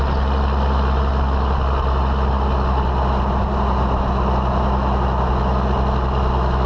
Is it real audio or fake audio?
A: real